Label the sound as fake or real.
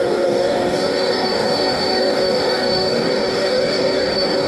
fake